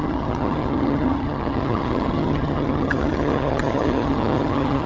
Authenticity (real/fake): fake